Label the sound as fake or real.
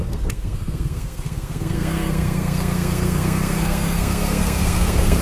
fake